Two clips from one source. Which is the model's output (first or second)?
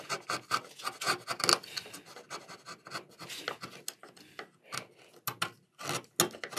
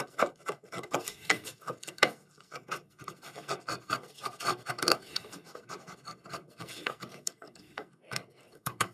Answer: second